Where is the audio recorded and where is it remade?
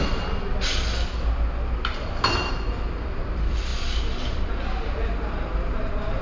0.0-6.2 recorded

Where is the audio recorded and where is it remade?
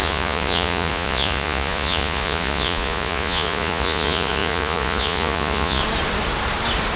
0.0-5.8 remade; 5.8-7.0 recorded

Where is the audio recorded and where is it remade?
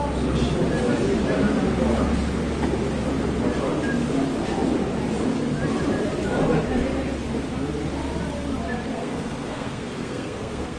0.0-8.9 recorded; 8.9-10.8 remade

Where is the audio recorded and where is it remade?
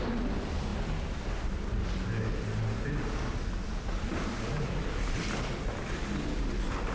0.0-6.9 recorded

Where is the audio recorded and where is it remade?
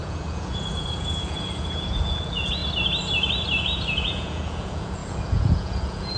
0.0-2.6 remade; 2.6-3.6 recorded; 3.6-6.2 remade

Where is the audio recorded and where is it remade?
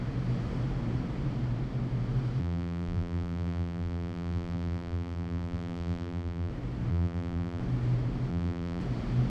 0.0-2.4 recorded; 2.4-6.5 remade; 6.5-6.9 recorded; 6.9-7.6 remade; 7.6-8.3 recorded; 8.3-8.8 remade; 8.8-9.3 recorded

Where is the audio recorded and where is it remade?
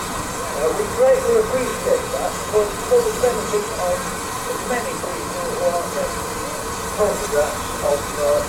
0.0-1.7 recorded; 1.7-2.5 remade; 2.5-8.5 recorded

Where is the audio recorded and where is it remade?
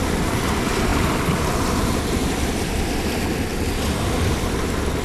0.0-5.0 recorded